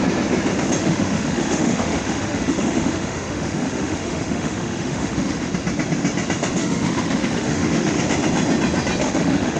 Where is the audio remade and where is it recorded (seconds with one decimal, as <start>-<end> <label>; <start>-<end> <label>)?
0.0-0.8 recorded; 0.8-5.5 remade; 5.5-6.6 recorded; 6.6-8.0 remade; 8.0-9.0 recorded; 9.0-9.6 remade